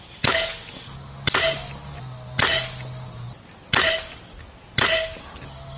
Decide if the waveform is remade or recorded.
recorded